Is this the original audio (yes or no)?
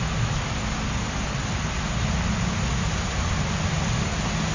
yes